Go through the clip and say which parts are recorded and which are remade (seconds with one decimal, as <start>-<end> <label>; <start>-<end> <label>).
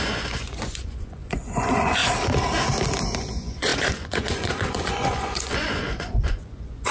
0.0-2.0 remade; 2.0-3.2 recorded; 3.2-6.9 remade